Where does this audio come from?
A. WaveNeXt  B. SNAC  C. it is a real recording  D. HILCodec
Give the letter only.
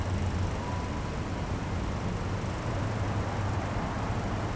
C